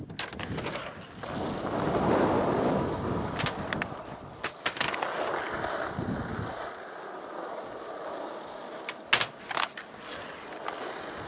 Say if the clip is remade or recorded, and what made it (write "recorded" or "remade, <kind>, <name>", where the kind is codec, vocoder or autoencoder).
recorded